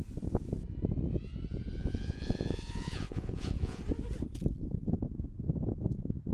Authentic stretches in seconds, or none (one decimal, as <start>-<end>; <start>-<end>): 0.0-1.8; 3.8-6.3